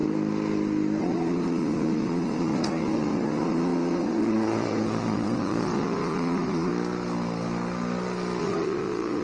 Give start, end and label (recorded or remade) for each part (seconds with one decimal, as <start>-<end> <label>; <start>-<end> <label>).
0.0-1.0 recorded; 1.0-6.7 remade; 6.7-8.4 recorded; 8.4-9.2 remade